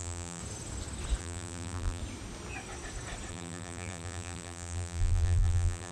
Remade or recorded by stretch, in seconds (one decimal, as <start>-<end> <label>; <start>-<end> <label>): 0.0-0.4 remade; 0.4-1.2 recorded; 1.2-2.0 remade; 2.0-3.3 recorded; 3.3-5.9 remade